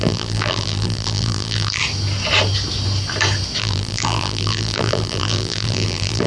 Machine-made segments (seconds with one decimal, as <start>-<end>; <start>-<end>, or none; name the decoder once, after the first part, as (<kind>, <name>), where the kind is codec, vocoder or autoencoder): 0.0-1.8 (vocoder, BigVGAN v2); 3.6-6.3